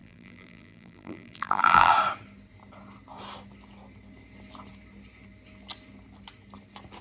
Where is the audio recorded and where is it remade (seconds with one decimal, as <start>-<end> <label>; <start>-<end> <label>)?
0.0-1.9 remade; 1.9-7.0 recorded